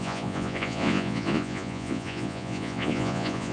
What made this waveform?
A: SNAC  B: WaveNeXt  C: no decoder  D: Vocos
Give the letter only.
D